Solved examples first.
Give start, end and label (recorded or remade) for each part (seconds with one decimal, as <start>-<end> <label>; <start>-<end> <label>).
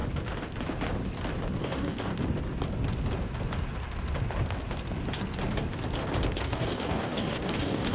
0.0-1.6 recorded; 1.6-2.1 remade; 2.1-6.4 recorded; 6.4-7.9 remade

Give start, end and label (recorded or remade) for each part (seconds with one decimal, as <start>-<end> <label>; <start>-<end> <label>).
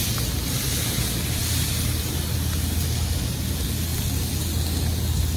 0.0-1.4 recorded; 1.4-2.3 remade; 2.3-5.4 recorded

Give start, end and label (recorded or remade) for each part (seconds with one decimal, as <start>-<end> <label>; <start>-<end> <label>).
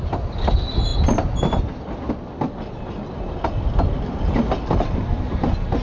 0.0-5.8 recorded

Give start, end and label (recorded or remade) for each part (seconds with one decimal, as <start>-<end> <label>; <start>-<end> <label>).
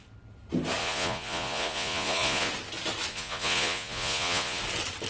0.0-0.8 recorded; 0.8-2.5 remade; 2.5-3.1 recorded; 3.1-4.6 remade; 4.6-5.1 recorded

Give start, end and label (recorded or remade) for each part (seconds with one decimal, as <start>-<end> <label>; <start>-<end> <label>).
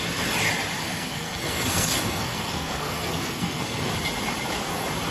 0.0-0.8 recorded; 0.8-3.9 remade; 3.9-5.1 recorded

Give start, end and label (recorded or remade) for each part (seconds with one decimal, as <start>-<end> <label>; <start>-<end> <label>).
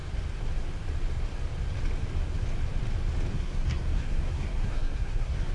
0.0-3.3 recorded; 3.3-5.5 remade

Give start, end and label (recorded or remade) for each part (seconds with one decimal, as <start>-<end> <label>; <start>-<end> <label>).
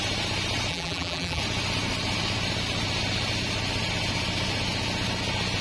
0.0-0.7 recorded; 0.7-1.4 remade; 1.4-5.6 recorded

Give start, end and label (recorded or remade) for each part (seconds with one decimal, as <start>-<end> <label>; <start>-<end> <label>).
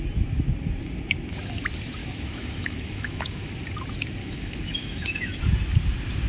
0.0-2.0 recorded; 2.0-3.5 remade; 3.5-4.2 recorded; 4.2-5.4 remade; 5.4-6.3 recorded